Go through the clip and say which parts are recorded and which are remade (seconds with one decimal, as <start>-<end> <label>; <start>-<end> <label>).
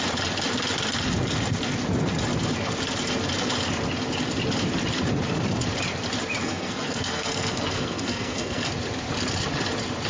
0.0-6.4 recorded; 6.4-8.7 remade; 8.7-10.1 recorded